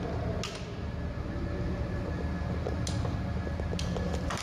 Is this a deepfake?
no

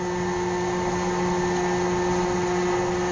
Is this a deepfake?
no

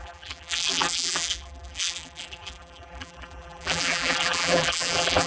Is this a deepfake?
yes